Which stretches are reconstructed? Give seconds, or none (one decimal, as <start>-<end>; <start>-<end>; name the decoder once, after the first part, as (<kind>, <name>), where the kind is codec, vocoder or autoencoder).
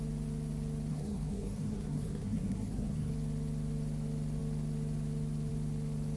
0.9-3.1 (codec, SNAC)